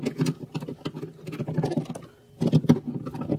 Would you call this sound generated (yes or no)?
no